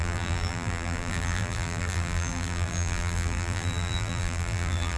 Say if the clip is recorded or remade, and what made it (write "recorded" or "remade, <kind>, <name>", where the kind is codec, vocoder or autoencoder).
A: remade, vocoder, BigVGAN v2